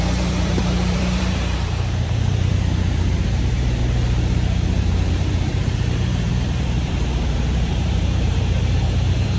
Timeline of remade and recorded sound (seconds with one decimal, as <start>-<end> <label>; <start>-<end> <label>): 0.0-3.8 remade; 3.8-4.8 recorded; 4.8-9.4 remade